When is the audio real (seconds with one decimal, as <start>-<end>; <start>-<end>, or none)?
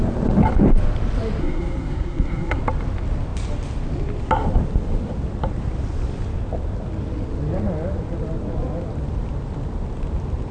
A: 0.0-1.4; 2.6-10.5